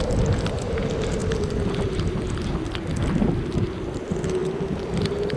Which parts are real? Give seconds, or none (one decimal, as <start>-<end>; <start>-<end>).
0.0-5.4